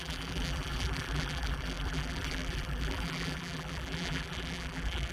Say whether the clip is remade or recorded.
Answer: remade